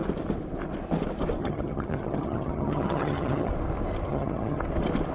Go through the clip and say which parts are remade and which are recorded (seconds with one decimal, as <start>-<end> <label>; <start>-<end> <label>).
0.0-1.4 recorded; 1.4-3.5 remade; 3.5-4.1 recorded; 4.1-4.6 remade; 4.6-5.1 recorded